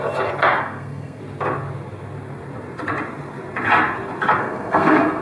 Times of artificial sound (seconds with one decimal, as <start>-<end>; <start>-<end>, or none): 0.6-1.2; 4.4-5.2